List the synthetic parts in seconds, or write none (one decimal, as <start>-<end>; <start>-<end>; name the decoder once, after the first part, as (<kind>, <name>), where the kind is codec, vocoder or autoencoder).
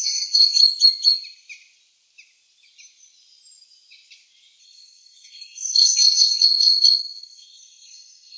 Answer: 0.0-0.6 (codec, SNAC); 4.6-8.4